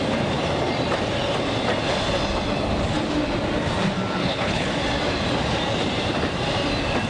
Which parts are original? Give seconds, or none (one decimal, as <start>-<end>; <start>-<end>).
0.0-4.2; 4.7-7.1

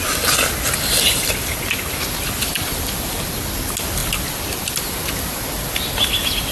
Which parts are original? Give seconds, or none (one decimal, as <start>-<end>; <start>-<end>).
0.0-6.5

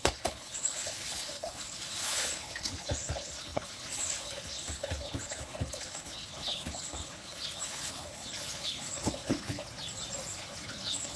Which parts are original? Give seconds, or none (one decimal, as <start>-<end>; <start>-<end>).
9.6-10.3

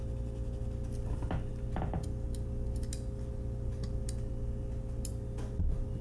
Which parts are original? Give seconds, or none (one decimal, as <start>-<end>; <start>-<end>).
0.0-6.0

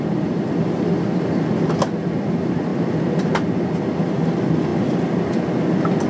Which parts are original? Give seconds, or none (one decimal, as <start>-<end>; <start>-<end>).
0.0-6.1

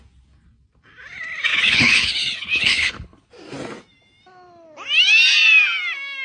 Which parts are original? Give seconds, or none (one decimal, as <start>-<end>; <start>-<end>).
0.0-1.5; 3.3-6.2